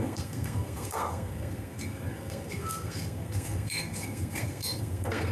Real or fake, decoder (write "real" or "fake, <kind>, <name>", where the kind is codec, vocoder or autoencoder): fake, codec, SNAC